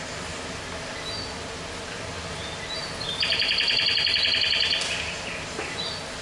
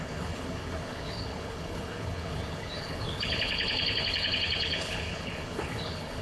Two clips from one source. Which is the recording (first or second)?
first